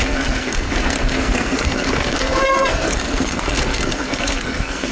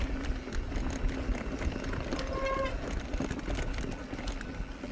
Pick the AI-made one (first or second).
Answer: first